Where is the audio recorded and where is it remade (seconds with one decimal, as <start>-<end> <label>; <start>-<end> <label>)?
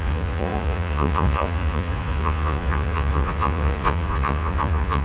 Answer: 0.0-5.0 remade